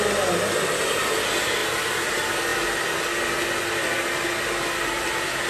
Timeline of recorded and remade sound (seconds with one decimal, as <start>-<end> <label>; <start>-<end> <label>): 0.0-5.5 recorded